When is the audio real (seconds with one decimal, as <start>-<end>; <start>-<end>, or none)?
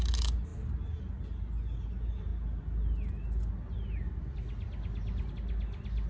0.0-6.1